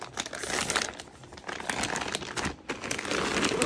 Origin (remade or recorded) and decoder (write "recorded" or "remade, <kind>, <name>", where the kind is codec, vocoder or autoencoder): recorded